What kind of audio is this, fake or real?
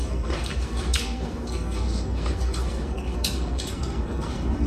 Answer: fake